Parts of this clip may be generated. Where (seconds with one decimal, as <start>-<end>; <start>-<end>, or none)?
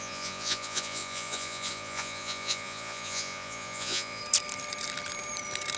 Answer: 0.0-4.2